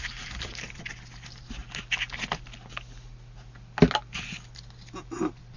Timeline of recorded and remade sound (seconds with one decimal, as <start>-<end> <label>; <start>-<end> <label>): 0.0-1.6 remade; 1.6-5.0 recorded; 5.0-5.6 remade